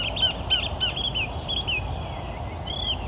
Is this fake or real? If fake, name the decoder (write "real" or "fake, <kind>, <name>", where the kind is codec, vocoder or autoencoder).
real